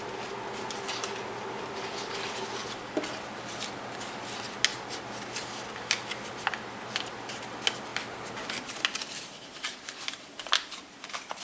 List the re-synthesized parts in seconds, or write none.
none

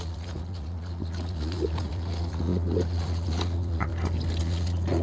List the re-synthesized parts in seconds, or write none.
0.0-3.9 (vocoder, Vocos); 4.4-5.0